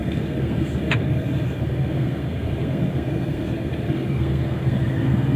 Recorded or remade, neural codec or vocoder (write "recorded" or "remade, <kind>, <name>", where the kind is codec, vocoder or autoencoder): remade, codec, SNAC